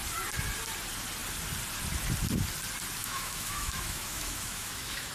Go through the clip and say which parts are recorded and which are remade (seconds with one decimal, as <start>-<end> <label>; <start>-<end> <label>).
0.0-3.0 recorded; 3.0-5.1 remade